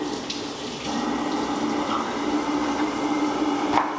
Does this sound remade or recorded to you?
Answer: recorded